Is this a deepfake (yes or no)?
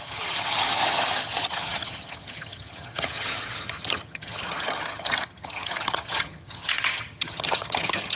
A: yes